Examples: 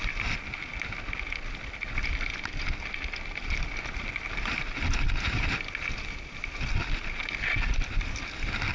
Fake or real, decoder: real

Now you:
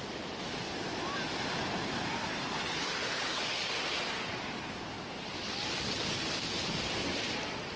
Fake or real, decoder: real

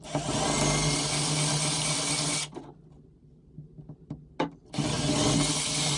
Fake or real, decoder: real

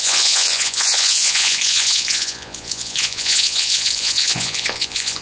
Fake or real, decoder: fake, vocoder, Vocos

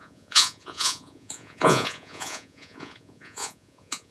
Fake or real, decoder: fake, vocoder, Vocos